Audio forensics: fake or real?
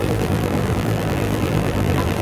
fake